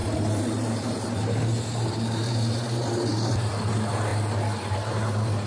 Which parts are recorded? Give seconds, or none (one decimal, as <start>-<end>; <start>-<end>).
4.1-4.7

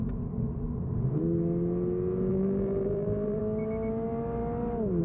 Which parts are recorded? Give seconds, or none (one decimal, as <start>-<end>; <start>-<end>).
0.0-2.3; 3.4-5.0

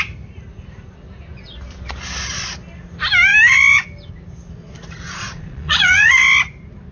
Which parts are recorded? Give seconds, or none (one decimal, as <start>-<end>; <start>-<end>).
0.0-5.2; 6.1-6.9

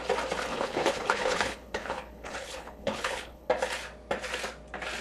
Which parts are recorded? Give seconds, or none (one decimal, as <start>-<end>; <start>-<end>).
0.0-0.5; 3.5-5.0

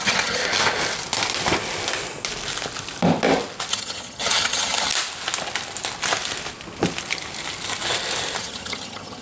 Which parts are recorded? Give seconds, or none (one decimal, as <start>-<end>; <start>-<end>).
0.4-3.7; 4.9-8.4